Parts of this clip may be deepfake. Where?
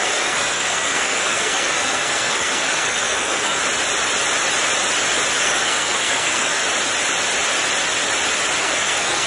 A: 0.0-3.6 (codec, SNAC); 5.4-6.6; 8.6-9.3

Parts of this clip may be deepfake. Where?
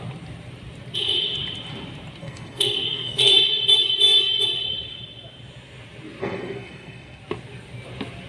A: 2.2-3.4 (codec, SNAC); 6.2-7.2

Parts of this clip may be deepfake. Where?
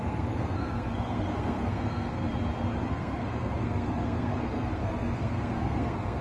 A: 0.0-2.3 (codec, SNAC); 2.9-6.2